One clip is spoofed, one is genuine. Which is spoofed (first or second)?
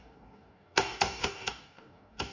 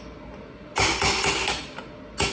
first